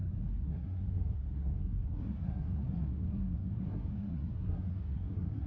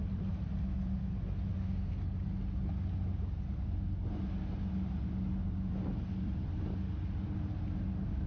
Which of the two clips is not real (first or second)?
first